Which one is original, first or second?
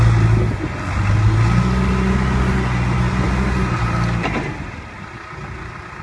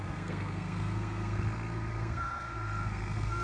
first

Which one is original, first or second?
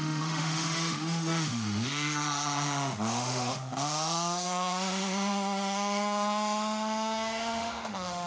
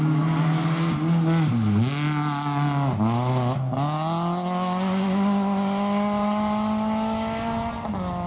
second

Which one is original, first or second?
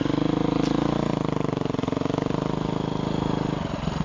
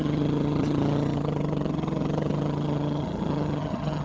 first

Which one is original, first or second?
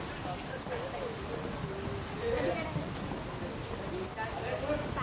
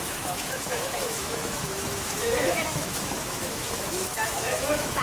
first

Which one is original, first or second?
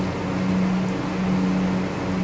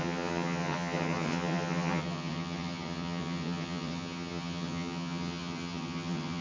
first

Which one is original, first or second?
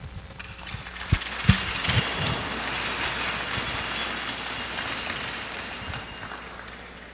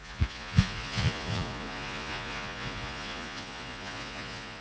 first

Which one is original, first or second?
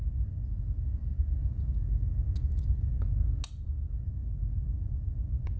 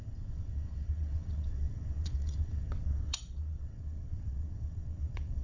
first